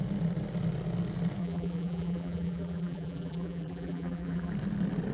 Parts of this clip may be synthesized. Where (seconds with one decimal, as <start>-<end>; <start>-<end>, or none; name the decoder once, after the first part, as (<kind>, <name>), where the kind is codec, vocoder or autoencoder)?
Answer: 1.4-4.5 (vocoder, BigVGAN v2)